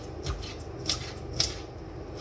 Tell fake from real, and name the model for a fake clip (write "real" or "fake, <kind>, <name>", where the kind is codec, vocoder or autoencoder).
real